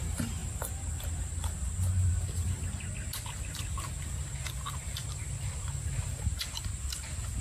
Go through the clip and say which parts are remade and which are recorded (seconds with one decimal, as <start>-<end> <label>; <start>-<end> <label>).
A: 0.0-7.4 recorded